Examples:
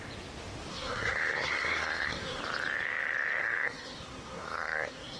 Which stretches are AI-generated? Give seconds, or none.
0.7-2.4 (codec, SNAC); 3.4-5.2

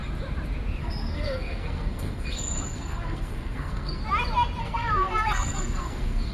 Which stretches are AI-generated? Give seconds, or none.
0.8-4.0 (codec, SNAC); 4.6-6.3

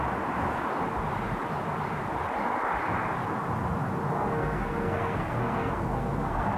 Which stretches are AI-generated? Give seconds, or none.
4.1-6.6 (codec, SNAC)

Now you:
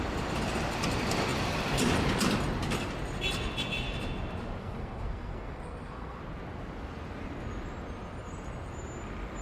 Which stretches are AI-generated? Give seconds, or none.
4.6-6.2 (codec, SNAC)

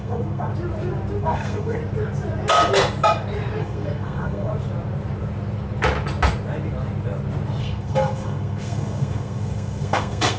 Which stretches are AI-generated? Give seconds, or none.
0.0-0.5 (codec, SNAC); 1.2-1.8; 3.6-4.5; 7.6-10.4

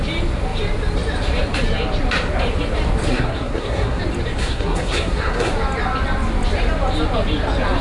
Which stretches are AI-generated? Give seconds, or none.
3.1-4.0 (codec, SNAC); 4.4-5.5

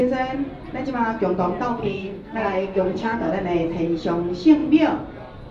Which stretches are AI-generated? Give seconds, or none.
1.8-3.3 (codec, SNAC)

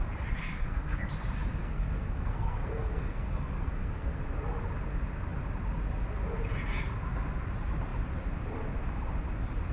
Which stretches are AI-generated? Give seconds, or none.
0.4-1.1 (codec, SNAC); 1.6-4.2